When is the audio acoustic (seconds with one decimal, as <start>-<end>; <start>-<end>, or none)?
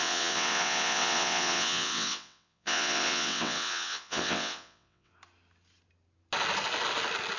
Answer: 5.1-7.4